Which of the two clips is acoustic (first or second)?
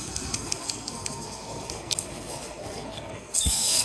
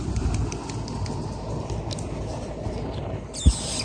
second